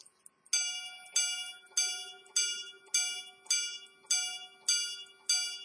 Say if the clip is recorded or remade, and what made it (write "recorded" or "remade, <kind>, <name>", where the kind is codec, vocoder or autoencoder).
recorded